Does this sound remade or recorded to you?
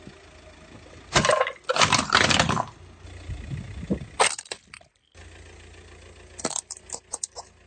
recorded